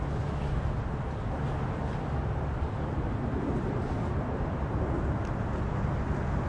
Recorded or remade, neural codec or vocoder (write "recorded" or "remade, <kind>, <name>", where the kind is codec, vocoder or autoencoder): recorded